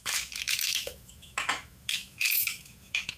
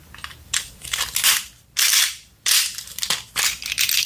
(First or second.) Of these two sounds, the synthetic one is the first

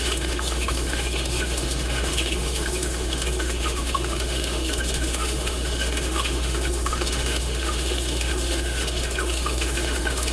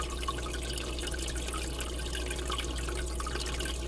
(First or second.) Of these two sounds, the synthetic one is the first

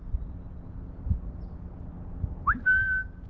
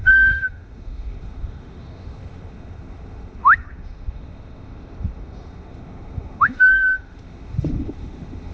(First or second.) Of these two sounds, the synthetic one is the second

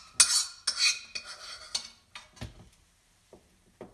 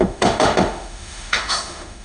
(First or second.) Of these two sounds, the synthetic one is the second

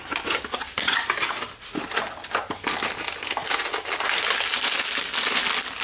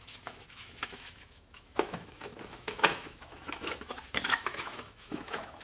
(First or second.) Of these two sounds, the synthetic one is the second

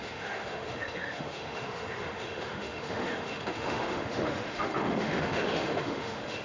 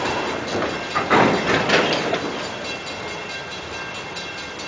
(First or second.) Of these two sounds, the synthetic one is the first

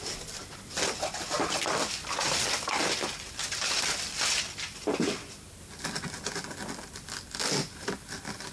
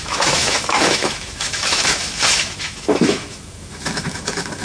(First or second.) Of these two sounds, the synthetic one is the second